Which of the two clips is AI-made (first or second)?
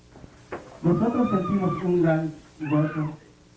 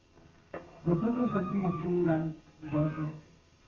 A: second